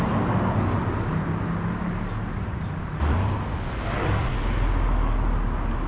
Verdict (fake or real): real